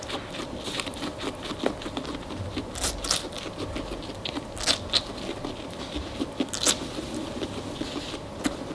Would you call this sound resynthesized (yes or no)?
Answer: no